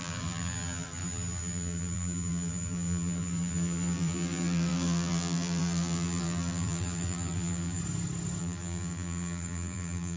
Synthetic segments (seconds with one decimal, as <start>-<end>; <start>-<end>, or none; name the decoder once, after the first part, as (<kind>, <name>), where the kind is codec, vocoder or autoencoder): 0.0-7.8 (vocoder, BigVGAN v2); 8.4-10.2